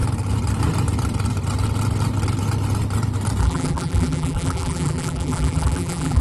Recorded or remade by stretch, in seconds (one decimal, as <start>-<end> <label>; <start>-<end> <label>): 0.0-3.4 recorded; 3.4-6.2 remade